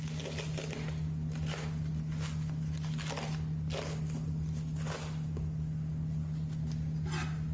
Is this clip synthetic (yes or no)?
no